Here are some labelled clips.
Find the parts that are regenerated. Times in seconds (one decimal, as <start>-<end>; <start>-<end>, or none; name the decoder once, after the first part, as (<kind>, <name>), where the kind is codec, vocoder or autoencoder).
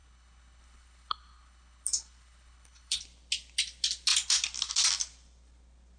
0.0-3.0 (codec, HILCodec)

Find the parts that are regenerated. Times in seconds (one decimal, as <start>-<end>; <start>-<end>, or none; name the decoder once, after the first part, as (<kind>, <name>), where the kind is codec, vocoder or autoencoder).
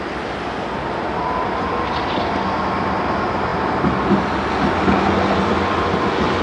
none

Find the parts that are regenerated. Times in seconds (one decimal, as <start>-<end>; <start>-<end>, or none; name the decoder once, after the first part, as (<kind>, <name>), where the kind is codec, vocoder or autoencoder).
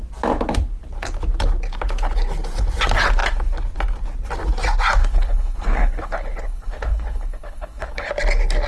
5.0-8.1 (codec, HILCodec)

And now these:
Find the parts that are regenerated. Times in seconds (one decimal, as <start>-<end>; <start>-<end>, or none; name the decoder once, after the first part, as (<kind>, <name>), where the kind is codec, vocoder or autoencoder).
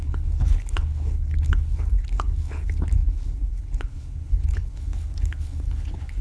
0.0-6.2 (codec, HILCodec)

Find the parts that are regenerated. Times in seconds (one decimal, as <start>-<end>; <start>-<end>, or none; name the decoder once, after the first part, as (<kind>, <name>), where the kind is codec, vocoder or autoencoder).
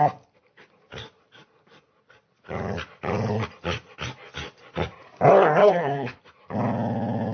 5.6-6.2 (codec, HILCodec)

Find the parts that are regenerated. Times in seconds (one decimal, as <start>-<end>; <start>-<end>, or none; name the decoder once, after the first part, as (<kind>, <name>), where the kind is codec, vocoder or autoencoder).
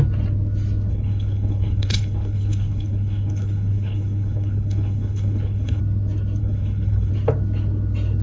0.9-5.8 (codec, HILCodec); 6.4-7.1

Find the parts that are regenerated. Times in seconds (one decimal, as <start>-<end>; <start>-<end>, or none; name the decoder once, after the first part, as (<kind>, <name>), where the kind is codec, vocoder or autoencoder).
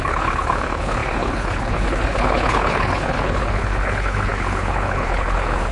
0.0-5.7 (codec, HILCodec)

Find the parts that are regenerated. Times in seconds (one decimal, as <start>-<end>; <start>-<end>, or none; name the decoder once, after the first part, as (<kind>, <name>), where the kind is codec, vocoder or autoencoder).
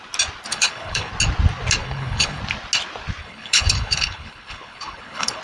0.5-1.1 (codec, HILCodec); 1.8-2.4; 3.2-5.4